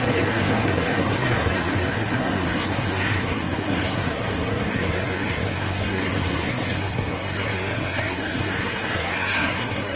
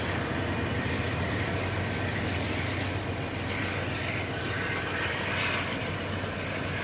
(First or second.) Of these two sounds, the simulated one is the first